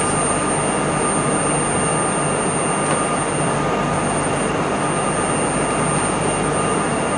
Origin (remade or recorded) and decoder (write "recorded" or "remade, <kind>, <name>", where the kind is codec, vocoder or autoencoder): recorded